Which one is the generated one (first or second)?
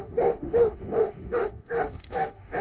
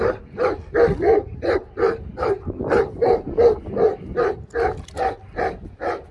first